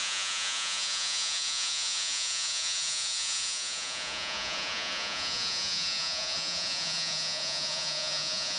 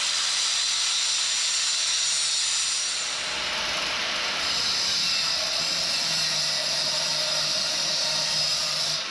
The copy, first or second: first